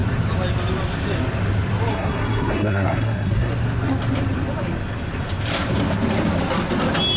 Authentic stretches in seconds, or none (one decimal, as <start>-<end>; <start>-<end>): 0.0-1.9; 3.5-7.2